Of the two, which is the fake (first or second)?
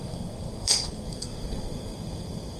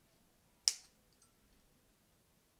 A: first